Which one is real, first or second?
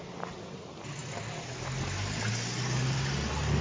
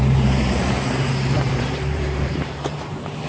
first